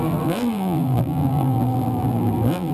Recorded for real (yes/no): no